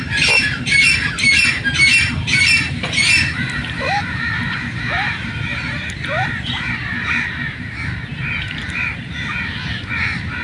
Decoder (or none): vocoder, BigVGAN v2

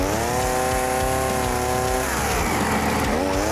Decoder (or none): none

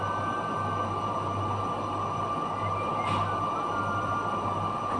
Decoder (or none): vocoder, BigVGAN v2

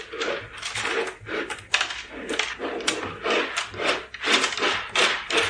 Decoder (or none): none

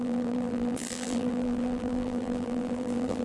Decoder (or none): vocoder, BigVGAN v2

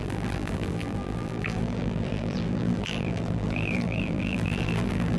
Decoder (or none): vocoder, BigVGAN v2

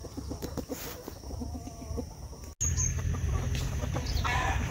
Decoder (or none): none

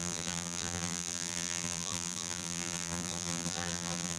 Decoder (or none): vocoder, BigVGAN v2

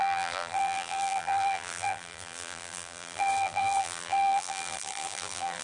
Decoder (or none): vocoder, BigVGAN v2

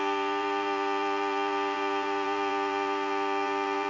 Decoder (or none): vocoder, BigVGAN v2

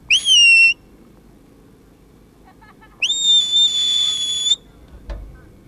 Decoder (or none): none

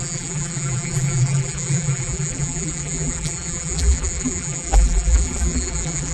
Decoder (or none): vocoder, BigVGAN v2